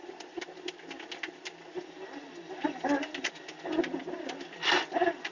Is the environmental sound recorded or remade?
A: recorded